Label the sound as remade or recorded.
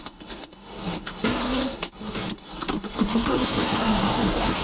remade